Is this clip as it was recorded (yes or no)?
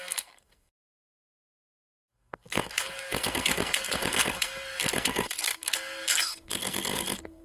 no